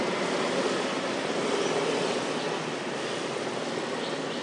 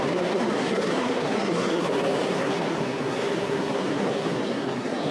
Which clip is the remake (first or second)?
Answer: second